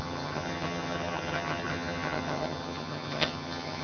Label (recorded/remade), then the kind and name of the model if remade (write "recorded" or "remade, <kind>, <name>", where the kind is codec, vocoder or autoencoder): remade, vocoder, HiFi-GAN